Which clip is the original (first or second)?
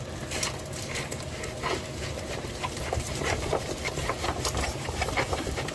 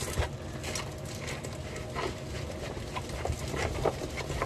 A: second